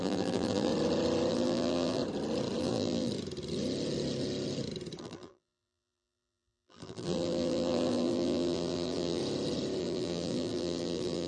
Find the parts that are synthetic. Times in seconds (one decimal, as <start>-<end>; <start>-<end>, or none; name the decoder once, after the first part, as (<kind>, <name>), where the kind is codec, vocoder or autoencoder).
0.0-0.7 (vocoder, BigVGAN v2); 1.3-2.0; 2.6-3.1; 5.0-9.2; 9.8-11.3